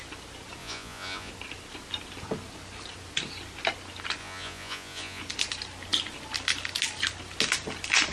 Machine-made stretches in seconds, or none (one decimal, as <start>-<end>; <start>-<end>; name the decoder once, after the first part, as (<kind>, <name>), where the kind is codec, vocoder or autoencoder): 0.6-1.3 (vocoder, Vocos); 4.2-5.2